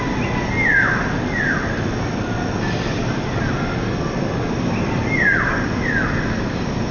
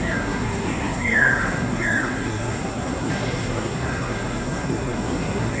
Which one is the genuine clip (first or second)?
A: first